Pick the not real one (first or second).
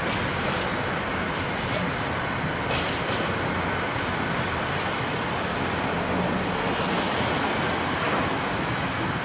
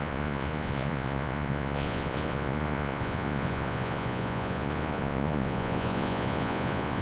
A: second